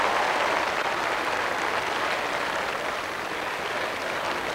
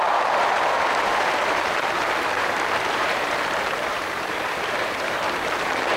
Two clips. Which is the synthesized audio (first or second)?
second